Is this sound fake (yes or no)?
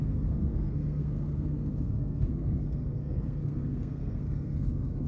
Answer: yes